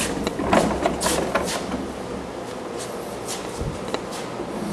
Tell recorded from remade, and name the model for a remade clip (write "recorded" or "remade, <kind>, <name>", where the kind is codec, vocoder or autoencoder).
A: recorded